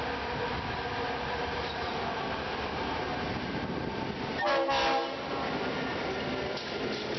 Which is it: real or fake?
real